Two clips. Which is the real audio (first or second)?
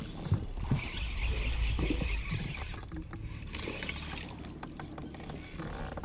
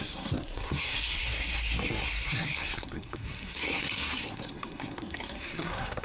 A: first